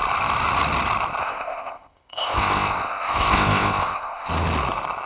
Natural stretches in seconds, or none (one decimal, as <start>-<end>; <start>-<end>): 0.0-1.2; 4.3-5.1